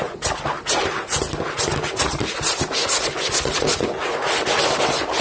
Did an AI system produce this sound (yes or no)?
no